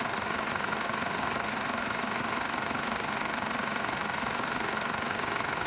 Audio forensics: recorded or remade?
remade